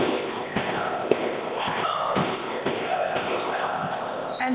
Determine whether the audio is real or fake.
fake